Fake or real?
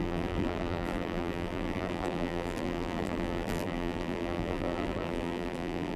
fake